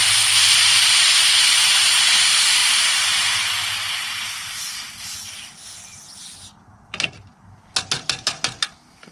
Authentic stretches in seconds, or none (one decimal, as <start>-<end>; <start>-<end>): 1.1-9.1